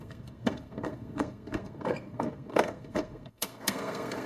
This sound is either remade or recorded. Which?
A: remade